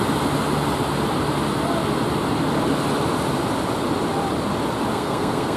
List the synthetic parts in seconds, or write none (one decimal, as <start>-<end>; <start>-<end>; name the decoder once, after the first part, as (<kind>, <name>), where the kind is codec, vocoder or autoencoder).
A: 4.9-5.6 (codec, SNAC)